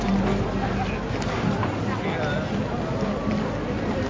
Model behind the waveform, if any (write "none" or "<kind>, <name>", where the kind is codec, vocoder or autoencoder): none